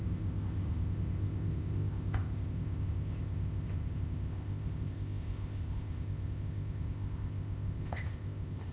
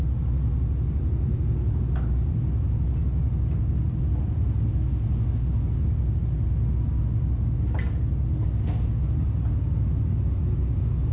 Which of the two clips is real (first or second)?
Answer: second